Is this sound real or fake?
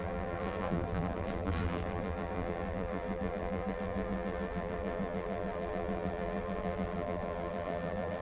fake